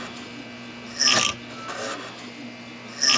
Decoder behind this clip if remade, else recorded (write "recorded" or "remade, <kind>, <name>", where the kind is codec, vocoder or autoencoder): recorded